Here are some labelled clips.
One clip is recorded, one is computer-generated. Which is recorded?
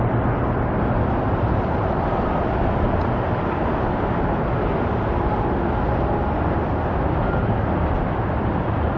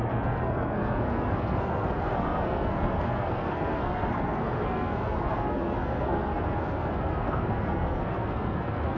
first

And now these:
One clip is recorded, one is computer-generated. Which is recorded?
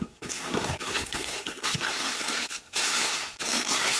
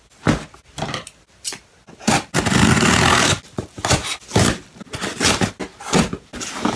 second